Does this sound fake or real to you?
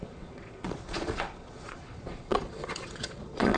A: fake